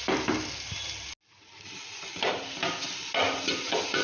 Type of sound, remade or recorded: recorded